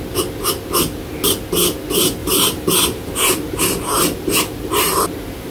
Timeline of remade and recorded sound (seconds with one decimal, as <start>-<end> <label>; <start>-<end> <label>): 0.0-2.2 recorded; 2.2-5.5 remade